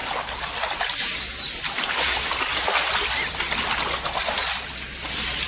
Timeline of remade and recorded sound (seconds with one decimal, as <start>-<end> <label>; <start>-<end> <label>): 0.0-5.5 recorded

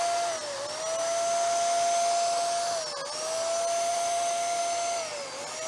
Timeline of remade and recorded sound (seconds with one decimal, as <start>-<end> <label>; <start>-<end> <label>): 0.0-3.9 recorded; 3.9-4.6 remade; 4.6-5.7 recorded